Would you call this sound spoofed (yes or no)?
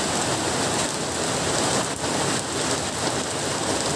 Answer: no